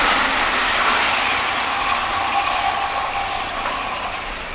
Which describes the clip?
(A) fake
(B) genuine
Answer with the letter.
B